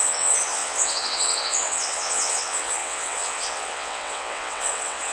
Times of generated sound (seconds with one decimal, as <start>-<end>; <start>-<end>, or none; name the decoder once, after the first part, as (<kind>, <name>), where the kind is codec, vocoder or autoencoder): 0.0-5.1 (vocoder, WaveNeXt)